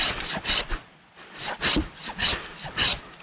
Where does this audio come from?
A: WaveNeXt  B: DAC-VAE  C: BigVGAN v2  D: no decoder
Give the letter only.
D